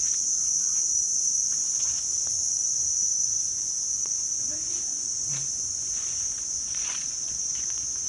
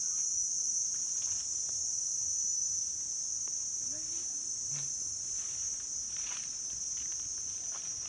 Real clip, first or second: second